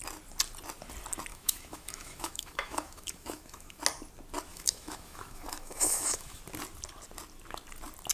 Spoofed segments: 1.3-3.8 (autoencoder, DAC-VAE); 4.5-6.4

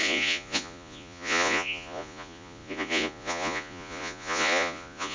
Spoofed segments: 0.0-5.1 (vocoder, Vocos)

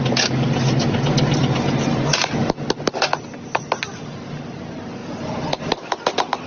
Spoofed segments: none

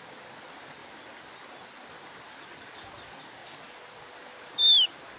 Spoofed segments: none

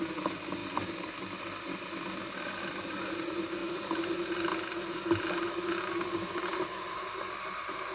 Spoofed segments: 3.6-4.1 (vocoder, BigVGAN v2); 4.5-5.2